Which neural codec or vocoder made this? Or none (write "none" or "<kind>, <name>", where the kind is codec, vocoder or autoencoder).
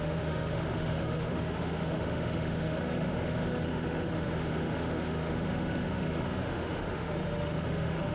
autoencoder, DAC-VAE